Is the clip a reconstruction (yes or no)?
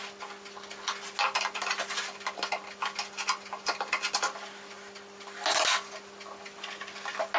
no